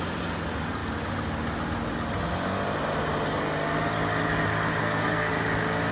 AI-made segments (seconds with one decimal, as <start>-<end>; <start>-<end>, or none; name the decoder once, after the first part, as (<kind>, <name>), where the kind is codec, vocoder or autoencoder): 4.8-5.3 (codec, SNAC)